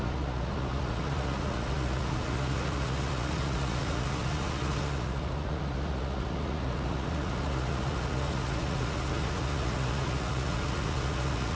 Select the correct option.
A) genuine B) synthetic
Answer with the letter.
B